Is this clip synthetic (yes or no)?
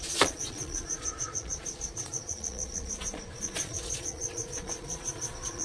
yes